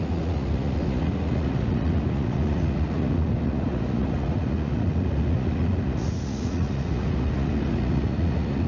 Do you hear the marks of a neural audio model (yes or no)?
yes